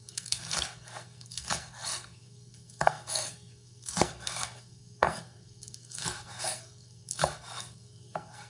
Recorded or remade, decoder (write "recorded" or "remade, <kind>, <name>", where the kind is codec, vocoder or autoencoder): remade, codec, SNAC